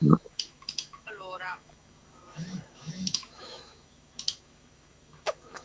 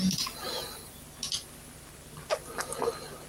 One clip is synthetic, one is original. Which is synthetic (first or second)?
first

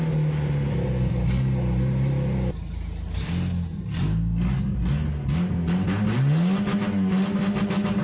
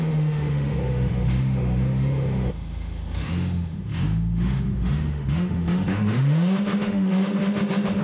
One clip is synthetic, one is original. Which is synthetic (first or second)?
second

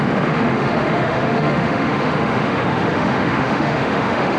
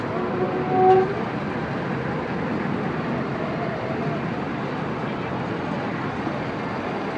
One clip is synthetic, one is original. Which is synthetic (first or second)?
first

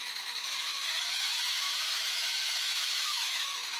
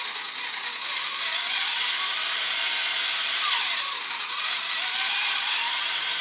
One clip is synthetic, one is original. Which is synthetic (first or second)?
first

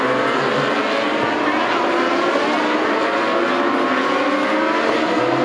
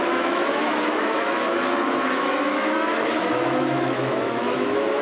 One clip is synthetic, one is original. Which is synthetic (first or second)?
second